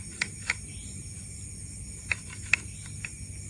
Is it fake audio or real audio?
real